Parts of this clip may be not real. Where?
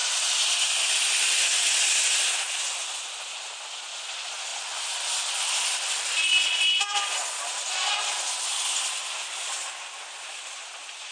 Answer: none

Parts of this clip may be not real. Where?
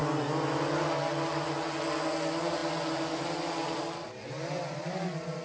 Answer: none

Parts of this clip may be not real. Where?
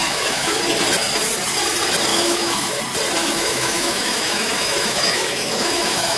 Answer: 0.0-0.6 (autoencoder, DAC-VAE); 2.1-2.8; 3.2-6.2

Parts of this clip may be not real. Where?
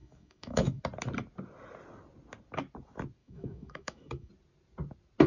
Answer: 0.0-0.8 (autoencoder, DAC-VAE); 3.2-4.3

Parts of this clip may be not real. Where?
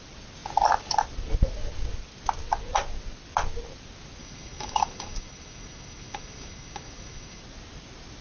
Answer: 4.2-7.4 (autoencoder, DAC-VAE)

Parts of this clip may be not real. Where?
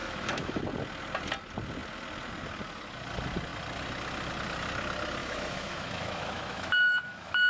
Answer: 0.0-0.6 (autoencoder, DAC-VAE); 5.2-7.5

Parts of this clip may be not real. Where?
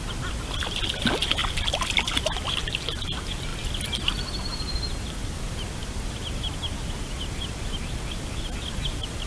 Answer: none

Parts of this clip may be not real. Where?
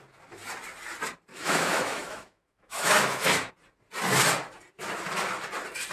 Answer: 1.3-3.5 (autoencoder, DAC-VAE)